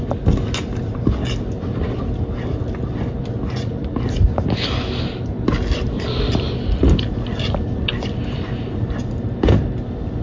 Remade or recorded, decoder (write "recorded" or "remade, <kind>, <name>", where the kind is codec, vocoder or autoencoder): recorded